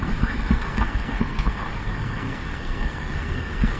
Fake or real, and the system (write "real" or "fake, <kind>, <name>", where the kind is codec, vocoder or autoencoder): fake, codec, SNAC